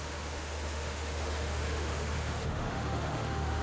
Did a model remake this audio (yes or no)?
yes